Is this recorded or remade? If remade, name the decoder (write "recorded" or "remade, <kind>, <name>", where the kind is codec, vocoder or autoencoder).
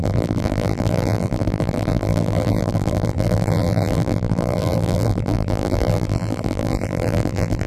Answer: remade, vocoder, BigVGAN v2